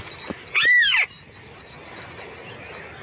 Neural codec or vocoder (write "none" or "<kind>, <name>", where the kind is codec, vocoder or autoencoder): none